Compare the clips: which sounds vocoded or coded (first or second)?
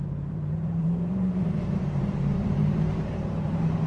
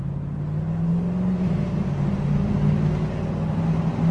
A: first